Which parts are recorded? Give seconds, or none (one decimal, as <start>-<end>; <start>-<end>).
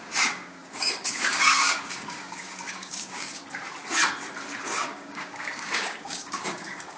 3.4-4.6